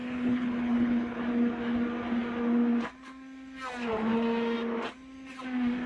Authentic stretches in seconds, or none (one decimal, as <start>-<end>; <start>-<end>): 1.2-5.9